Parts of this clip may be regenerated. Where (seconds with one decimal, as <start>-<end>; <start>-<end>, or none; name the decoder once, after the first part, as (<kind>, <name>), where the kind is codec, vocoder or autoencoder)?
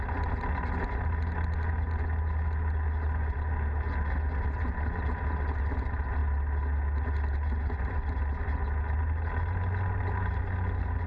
none